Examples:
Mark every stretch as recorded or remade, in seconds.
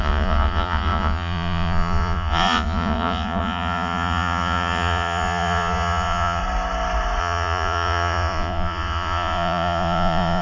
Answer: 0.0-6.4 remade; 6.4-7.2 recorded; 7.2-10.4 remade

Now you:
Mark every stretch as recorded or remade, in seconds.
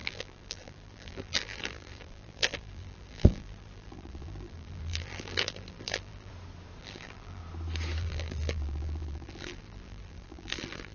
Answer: 0.0-6.3 remade; 6.3-6.8 recorded; 6.8-7.4 remade; 7.4-8.0 recorded; 8.0-10.9 remade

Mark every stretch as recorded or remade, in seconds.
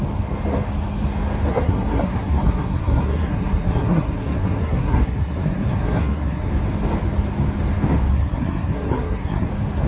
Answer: 0.0-1.5 recorded; 1.5-6.5 remade; 6.5-8.1 recorded; 8.1-9.5 remade; 9.5-9.9 recorded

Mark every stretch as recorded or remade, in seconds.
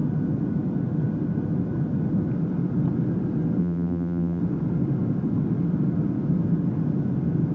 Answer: 0.0-3.6 recorded; 3.6-4.4 remade; 4.4-7.5 recorded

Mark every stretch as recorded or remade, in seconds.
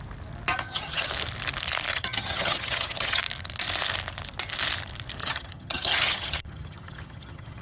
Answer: 0.0-0.5 recorded; 0.5-1.1 remade; 1.1-1.9 recorded; 1.9-3.2 remade; 3.2-5.2 recorded; 5.2-7.6 remade